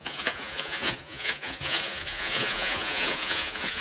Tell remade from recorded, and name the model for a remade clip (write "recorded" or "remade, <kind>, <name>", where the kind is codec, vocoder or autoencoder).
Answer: remade, vocoder, Vocos